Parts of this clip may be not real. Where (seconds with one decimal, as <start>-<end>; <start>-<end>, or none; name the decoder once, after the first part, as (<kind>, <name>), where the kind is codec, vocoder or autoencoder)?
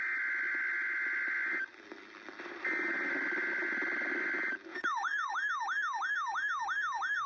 4.7-5.3 (vocoder, Vocos)